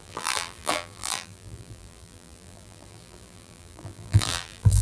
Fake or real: fake